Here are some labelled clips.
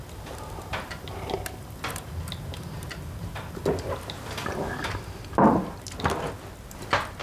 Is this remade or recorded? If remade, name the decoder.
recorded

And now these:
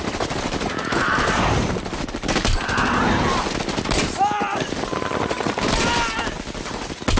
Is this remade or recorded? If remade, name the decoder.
recorded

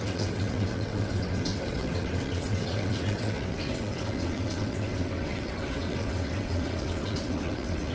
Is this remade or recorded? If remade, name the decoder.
remade, vocoder, WaveNeXt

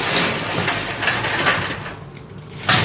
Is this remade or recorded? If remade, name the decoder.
recorded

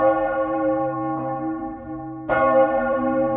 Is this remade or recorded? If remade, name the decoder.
remade, vocoder, BigVGAN v2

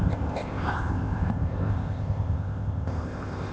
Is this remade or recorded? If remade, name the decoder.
remade, codec, ZipCodec